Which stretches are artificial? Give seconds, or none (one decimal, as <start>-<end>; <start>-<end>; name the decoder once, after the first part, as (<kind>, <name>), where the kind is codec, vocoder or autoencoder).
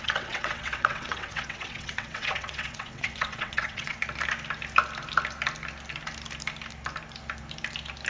0.0-4.0 (vocoder, WaveNeXt)